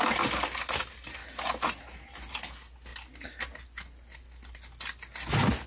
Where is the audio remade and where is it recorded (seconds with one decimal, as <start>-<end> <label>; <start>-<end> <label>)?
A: 0.0-5.7 recorded